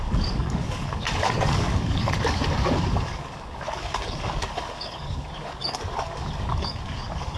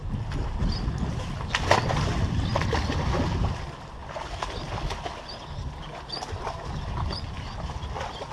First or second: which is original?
second